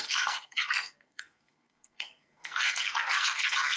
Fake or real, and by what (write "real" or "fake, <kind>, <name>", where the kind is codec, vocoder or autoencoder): fake, codec, SNAC